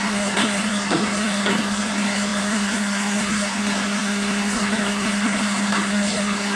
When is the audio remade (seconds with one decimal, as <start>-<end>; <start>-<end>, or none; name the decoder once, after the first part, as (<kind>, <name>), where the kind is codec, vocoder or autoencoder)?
0.0-6.6 (codec, SNAC)